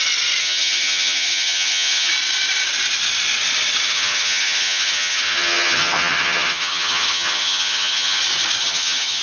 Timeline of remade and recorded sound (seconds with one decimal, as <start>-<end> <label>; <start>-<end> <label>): 0.0-0.4 recorded; 0.4-2.1 remade; 2.1-3.8 recorded; 3.8-8.2 remade; 8.2-8.6 recorded; 8.6-9.2 remade